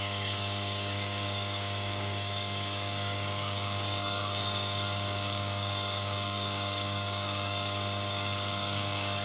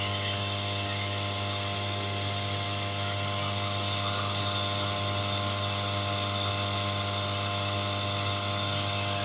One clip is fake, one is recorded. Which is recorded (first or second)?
second